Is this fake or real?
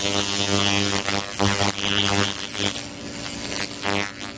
real